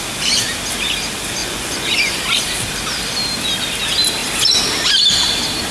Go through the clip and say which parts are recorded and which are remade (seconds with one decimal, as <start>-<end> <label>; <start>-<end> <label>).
0.0-1.4 recorded; 1.4-2.2 remade; 2.2-5.7 recorded

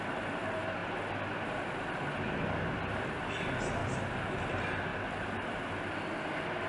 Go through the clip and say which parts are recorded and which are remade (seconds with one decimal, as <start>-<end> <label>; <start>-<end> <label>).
0.0-6.7 recorded

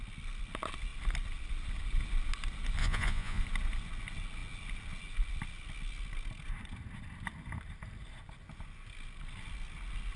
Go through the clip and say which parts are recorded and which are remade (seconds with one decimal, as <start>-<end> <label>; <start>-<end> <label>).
0.0-2.8 recorded; 2.8-3.4 remade; 3.4-10.2 recorded